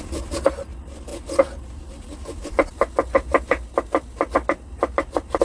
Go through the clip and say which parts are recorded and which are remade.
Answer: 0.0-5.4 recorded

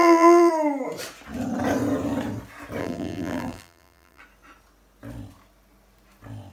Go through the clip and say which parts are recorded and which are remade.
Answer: 0.0-0.5 remade; 0.5-2.8 recorded; 2.8-4.2 remade; 4.2-6.5 recorded

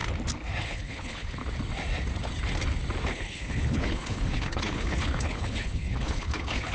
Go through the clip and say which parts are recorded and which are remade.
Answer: 0.0-0.6 recorded; 0.6-1.4 remade; 1.4-3.1 recorded; 3.1-6.7 remade

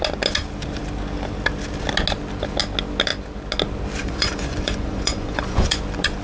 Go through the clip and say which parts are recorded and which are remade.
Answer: 0.0-4.0 recorded; 4.0-5.8 remade; 5.8-6.2 recorded

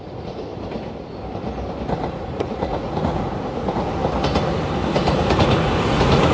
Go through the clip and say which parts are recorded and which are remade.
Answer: 0.0-0.5 remade; 0.5-2.1 recorded; 2.1-4.0 remade; 4.0-5.4 recorded; 5.4-6.3 remade